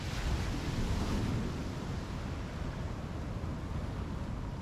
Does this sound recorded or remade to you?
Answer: recorded